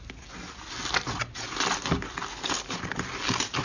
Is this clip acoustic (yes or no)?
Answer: yes